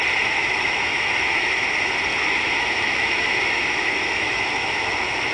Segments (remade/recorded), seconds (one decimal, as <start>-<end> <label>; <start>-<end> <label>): 0.0-0.4 recorded; 0.4-1.7 remade; 1.7-2.1 recorded; 2.1-5.3 remade